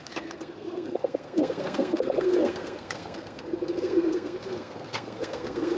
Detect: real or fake fake